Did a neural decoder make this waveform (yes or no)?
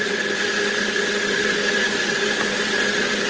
no